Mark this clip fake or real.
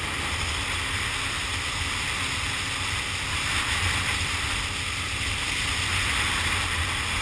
real